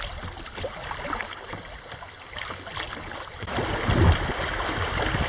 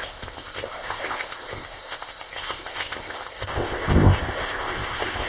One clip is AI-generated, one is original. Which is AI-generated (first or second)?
second